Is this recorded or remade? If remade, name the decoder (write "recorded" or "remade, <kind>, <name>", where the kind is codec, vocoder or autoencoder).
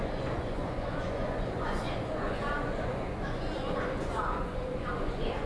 remade, vocoder, Vocos